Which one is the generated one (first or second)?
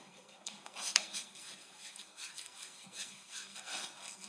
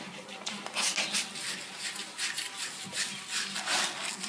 first